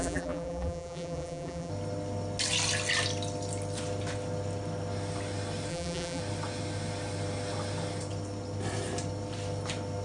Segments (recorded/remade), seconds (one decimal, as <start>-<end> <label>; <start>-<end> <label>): 0.0-1.7 remade; 1.7-5.7 recorded; 5.7-6.2 remade; 6.2-10.0 recorded